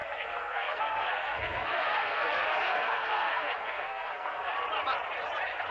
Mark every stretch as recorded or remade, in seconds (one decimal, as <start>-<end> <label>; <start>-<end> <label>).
0.0-4.5 remade; 4.5-5.7 recorded